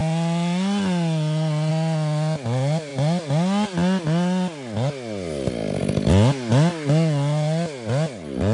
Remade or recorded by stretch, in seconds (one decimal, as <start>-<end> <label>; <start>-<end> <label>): 0.0-8.5 recorded

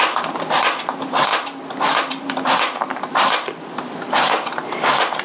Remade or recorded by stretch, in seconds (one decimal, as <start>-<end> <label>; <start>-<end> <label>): 0.0-5.2 remade